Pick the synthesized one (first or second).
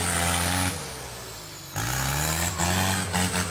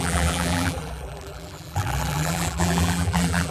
second